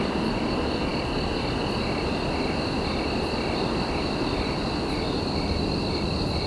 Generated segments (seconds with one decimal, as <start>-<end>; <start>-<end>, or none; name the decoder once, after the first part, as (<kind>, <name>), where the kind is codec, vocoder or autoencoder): none